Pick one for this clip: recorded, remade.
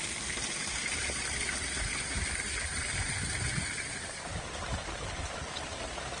remade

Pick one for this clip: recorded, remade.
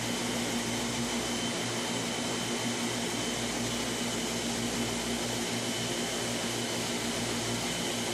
recorded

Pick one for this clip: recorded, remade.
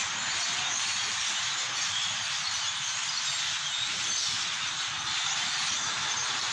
remade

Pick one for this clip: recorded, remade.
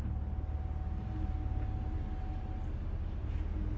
recorded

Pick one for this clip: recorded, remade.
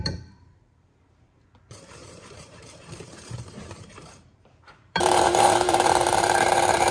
remade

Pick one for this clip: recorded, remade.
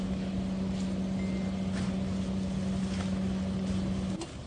recorded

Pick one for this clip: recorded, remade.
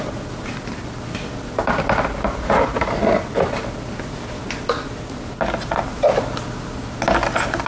recorded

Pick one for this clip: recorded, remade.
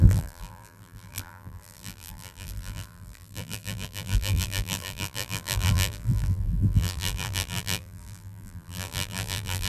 remade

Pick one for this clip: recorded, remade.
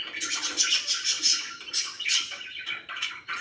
recorded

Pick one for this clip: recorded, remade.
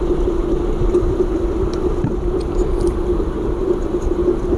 remade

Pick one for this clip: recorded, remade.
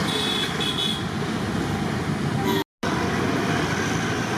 recorded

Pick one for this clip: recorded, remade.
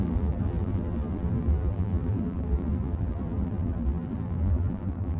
remade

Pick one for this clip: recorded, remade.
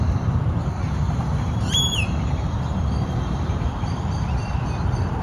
remade